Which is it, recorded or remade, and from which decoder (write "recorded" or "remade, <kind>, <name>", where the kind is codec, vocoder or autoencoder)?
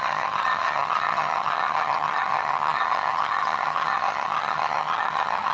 remade, vocoder, HiFi-GAN